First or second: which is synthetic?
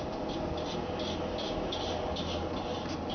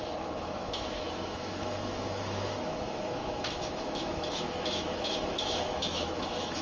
second